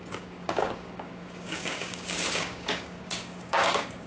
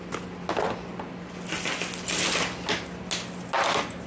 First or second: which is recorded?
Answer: second